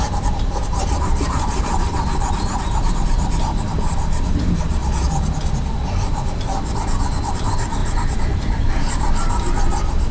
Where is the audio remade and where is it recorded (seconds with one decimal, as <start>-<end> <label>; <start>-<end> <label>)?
0.0-4.8 remade; 4.8-7.3 recorded; 7.3-10.1 remade